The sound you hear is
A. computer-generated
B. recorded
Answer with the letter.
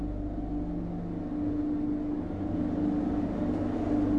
B